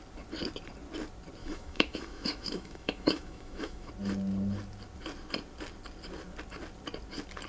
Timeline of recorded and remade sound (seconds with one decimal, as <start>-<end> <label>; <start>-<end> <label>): 0.0-1.4 recorded; 1.4-3.9 remade; 3.9-7.5 recorded